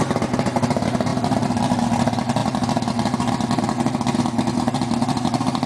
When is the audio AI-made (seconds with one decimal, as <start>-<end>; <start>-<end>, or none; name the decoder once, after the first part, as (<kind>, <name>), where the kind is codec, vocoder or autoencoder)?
none